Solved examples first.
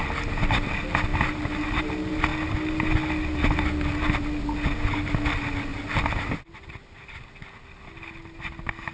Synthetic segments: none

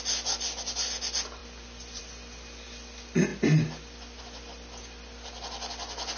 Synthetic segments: none

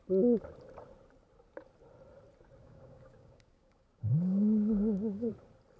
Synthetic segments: 2.6-5.3 (codec, DAC)

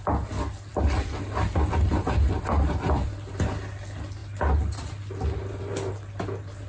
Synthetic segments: none